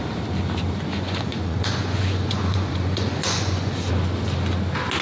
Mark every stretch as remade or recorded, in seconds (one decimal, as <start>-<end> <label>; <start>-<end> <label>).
0.0-0.9 recorded; 0.9-3.9 remade; 3.9-5.0 recorded